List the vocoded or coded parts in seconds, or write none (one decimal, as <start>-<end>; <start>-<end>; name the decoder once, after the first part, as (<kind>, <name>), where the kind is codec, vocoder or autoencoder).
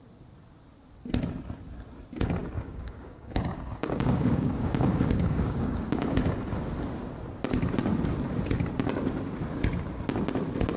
2.4-6.2 (codec, DAC)